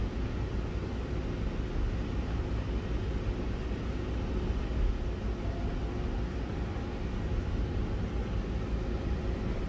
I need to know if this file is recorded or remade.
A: recorded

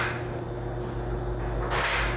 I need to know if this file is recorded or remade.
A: recorded